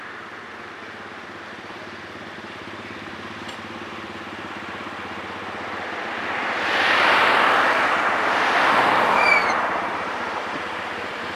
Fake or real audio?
fake